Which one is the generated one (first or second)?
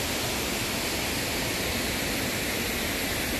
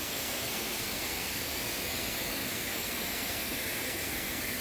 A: second